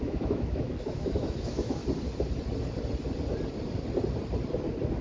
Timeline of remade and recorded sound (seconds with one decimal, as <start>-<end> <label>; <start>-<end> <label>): 0.0-1.8 remade; 1.8-5.0 recorded